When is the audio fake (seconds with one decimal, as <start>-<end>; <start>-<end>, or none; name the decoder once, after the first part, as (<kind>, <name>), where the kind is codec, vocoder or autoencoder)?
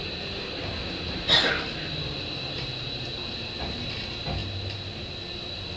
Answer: 0.8-3.5 (vocoder, BigVGAN v2); 4.4-4.9